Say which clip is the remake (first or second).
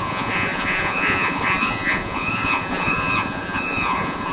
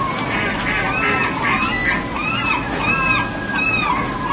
first